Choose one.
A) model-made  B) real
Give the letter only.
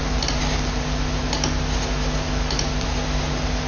B